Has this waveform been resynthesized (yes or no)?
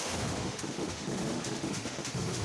yes